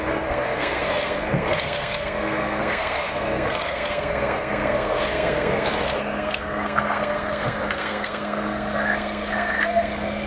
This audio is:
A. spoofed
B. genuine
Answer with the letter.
A